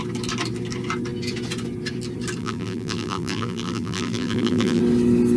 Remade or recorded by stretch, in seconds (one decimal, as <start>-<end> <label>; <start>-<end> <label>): 0.0-2.4 recorded; 2.4-4.8 remade; 4.8-5.4 recorded

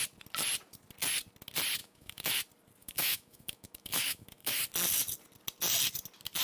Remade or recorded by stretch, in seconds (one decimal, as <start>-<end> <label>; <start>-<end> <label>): 0.0-1.8 recorded; 1.8-2.4 remade; 2.4-2.8 recorded; 2.8-4.6 remade; 4.6-6.4 recorded

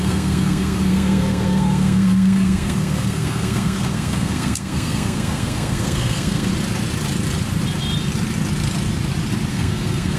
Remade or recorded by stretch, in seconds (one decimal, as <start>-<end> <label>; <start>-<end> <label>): 0.0-6.5 remade; 6.5-9.5 recorded; 9.5-10.2 remade

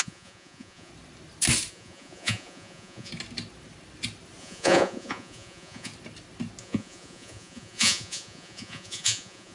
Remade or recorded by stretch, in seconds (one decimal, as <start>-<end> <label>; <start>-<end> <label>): 0.0-0.9 remade; 0.9-1.7 recorded; 1.7-3.1 remade; 3.1-4.4 recorded; 4.4-5.9 remade; 5.9-6.6 recorded; 6.6-9.5 remade

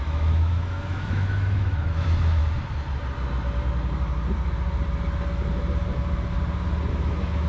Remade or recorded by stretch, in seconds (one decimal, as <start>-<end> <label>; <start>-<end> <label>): 0.0-2.4 remade; 2.4-6.9 recorded; 6.9-7.5 remade